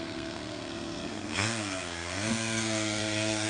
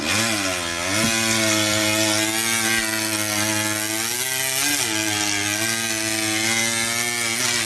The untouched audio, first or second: second